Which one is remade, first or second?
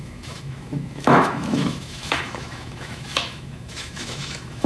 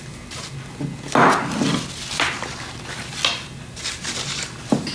first